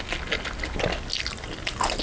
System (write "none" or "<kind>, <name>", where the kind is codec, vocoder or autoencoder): none